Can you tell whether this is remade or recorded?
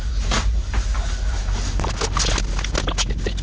recorded